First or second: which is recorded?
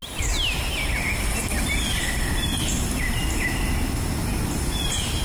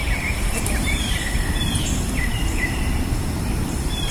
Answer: first